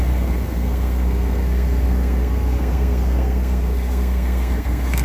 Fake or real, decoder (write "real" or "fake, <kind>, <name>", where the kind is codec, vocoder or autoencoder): fake, codec, SNAC